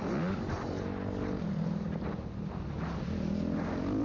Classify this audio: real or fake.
real